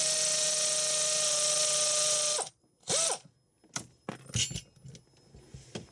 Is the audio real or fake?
real